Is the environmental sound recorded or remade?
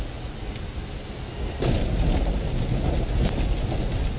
recorded